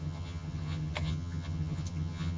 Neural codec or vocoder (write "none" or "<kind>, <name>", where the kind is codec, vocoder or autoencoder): vocoder, HiFi-GAN